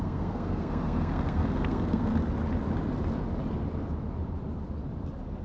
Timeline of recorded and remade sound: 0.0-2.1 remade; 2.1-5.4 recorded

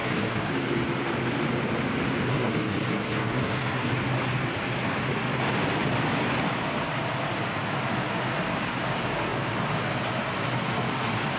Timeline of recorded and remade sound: 0.0-0.5 remade; 0.5-2.3 recorded; 2.3-3.9 remade; 3.9-11.4 recorded

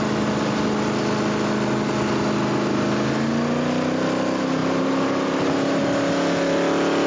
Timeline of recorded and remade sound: 0.0-7.1 recorded

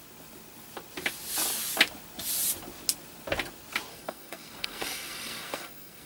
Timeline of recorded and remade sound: 0.0-3.9 recorded; 3.9-6.1 remade